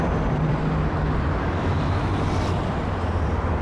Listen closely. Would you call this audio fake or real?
fake